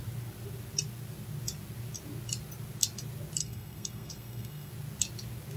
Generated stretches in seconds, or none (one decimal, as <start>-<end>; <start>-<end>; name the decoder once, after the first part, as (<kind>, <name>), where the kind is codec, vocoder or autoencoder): 3.4-4.7 (codec, SNAC)